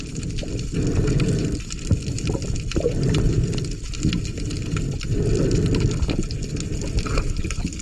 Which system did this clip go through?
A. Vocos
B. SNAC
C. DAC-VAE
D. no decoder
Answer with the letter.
D